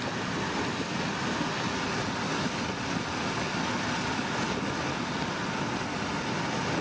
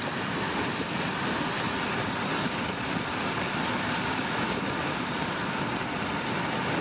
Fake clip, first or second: second